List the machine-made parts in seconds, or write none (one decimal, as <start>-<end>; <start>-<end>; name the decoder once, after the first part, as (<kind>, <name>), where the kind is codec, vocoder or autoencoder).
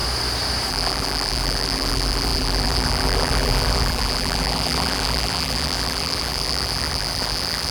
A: 0.7-7.7 (vocoder, BigVGAN v2)